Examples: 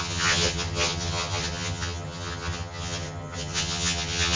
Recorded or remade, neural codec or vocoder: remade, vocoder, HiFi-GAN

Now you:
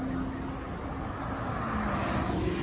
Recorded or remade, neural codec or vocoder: recorded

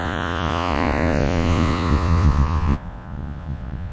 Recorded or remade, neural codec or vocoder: remade, vocoder, Vocos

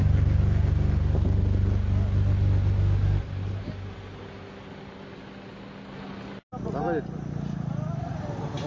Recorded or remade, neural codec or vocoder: recorded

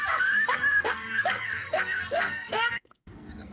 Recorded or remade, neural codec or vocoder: remade, codec, SNAC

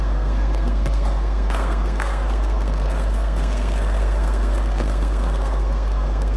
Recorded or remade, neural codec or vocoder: remade, codec, SNAC